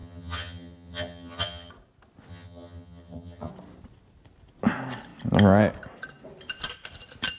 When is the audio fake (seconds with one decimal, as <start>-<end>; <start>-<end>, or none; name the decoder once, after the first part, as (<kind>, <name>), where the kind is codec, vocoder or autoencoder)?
0.0-1.7 (vocoder, HiFi-GAN); 2.3-3.5